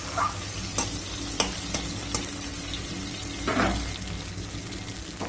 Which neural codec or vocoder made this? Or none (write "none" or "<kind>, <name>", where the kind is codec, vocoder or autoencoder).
none